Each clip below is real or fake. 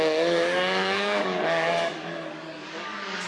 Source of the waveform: fake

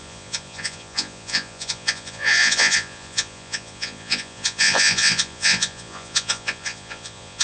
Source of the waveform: fake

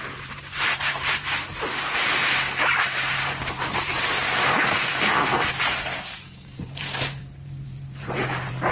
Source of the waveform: fake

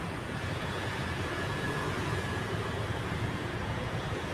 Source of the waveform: fake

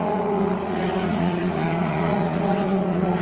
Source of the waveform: fake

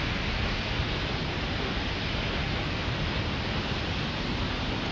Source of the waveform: real